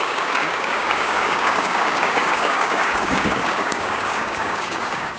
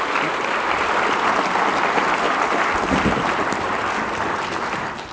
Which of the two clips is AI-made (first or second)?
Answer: first